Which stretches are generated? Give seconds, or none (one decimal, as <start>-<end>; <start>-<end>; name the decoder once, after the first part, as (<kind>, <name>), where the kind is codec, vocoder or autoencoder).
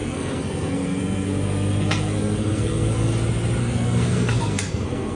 0.0-3.1 (codec, SNAC); 3.6-5.1